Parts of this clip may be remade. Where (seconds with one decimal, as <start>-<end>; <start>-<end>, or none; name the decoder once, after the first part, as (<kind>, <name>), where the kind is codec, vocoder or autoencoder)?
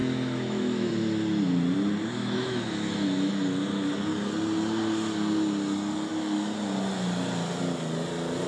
0.0-0.9 (autoencoder, DAC-VAE); 2.2-3.3